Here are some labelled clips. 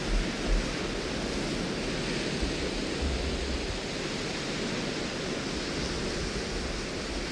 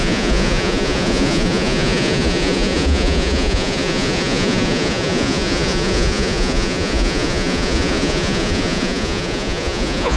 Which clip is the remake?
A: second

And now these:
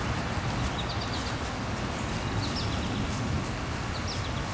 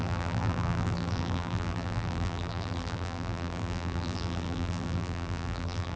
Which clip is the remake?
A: second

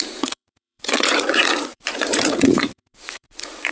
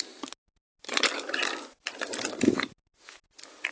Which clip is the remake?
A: first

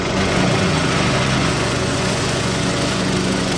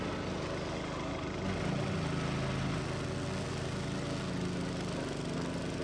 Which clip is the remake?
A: first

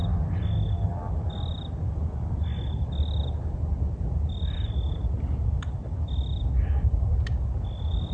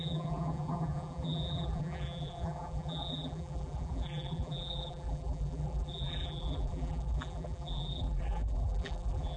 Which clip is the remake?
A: second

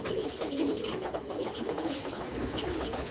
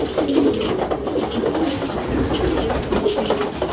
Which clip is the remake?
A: first